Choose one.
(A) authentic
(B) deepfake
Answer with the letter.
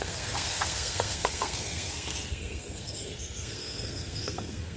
B